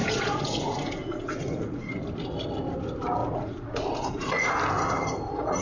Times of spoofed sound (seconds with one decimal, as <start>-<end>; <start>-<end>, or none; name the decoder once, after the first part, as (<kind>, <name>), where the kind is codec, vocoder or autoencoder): 0.0-2.0 (vocoder, Vocos); 3.2-4.5